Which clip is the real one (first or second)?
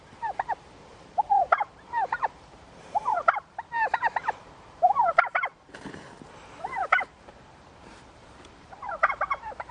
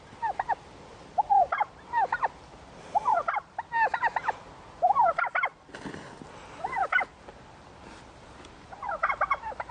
second